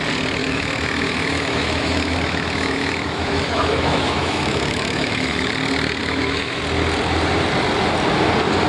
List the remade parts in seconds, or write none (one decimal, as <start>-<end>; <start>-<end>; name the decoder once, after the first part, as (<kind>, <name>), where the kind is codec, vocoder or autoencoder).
0.4-5.5 (autoencoder, DAC-VAE); 6.0-6.6